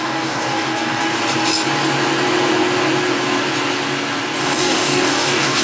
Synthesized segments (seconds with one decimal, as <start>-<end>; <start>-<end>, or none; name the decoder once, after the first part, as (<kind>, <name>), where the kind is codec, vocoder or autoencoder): 0.0-1.1 (codec, DAC); 4.4-5.6